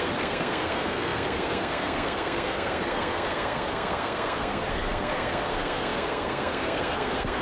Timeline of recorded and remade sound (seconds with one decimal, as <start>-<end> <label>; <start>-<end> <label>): 0.0-7.4 remade